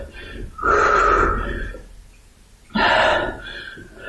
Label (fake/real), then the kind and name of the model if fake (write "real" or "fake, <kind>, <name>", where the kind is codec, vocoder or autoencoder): real